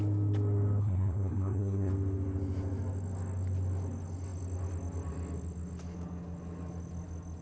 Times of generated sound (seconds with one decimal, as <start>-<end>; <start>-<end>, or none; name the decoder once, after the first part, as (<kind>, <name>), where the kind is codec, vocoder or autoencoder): 0.8-1.9 (codec, SNAC)